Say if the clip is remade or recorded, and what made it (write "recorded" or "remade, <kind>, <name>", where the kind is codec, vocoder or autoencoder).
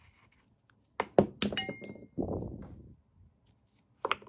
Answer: recorded